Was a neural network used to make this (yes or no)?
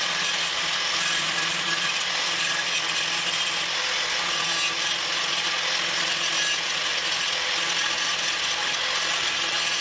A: no